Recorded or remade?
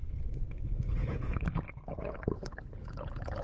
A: remade